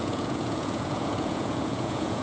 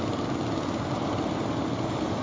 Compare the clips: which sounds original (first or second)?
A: second